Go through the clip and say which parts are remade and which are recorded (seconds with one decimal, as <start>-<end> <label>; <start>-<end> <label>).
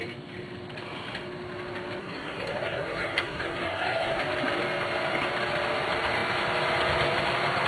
0.0-2.0 recorded; 2.0-4.2 remade; 4.2-7.7 recorded